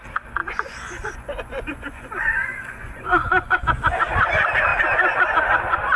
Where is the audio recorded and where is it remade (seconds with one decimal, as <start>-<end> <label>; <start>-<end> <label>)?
0.0-0.4 recorded; 0.4-4.0 remade; 4.0-6.0 recorded